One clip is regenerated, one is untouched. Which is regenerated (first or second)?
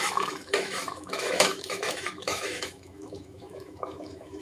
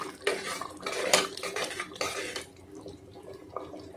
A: first